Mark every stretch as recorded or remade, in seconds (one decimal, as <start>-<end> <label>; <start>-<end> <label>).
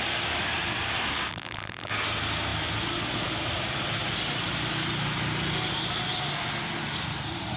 0.0-1.3 recorded; 1.3-1.9 remade; 1.9-7.6 recorded